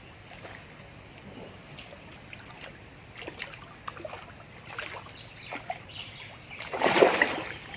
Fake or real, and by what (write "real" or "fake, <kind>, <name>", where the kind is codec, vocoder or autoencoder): real